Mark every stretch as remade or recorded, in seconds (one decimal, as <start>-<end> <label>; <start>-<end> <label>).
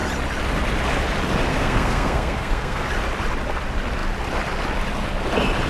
0.0-1.5 recorded; 1.5-2.8 remade; 2.8-5.7 recorded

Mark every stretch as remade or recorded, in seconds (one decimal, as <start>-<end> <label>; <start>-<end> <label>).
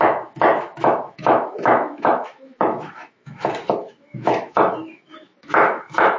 0.0-6.2 remade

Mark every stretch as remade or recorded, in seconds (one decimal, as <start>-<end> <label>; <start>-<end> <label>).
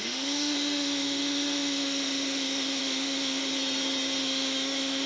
0.0-3.5 remade; 3.5-4.2 recorded; 4.2-5.1 remade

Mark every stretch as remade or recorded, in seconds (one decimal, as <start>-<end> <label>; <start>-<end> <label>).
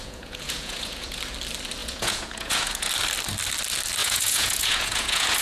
0.0-1.2 remade; 1.2-1.8 recorded; 1.8-2.9 remade; 2.9-4.0 recorded; 4.0-5.4 remade